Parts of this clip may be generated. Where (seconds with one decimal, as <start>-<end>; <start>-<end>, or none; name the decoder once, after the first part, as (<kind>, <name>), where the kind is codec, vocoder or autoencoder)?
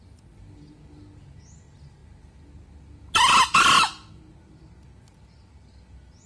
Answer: none